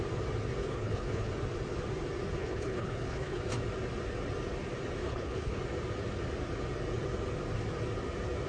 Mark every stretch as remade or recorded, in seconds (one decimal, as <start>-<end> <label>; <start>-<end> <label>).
0.0-0.6 recorded; 0.6-1.3 remade; 1.3-2.4 recorded; 2.4-3.4 remade; 3.4-5.0 recorded; 5.0-5.6 remade; 5.6-8.5 recorded